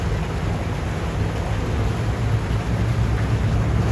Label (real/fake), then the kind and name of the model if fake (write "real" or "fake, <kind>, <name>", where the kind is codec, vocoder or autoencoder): real